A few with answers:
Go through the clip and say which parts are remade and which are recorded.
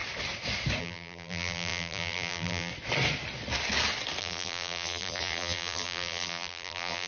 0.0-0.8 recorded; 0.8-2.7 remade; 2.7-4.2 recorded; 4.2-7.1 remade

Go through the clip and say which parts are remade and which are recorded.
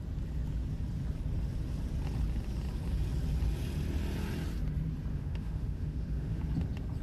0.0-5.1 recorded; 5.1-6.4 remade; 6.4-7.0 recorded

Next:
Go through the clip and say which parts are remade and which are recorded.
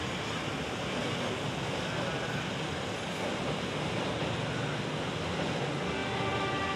0.0-6.8 recorded